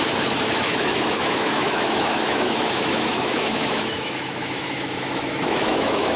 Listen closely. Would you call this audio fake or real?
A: fake